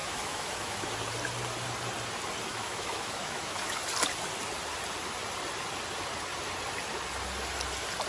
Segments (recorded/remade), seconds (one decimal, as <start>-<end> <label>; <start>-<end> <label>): 0.0-0.9 remade; 0.9-2.5 recorded; 2.5-3.8 remade; 3.8-8.1 recorded